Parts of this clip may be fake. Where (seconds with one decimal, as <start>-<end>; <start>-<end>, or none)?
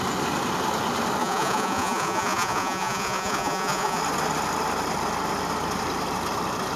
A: 1.2-4.0